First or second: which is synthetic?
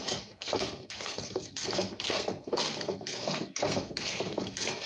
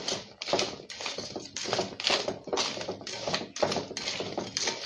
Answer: first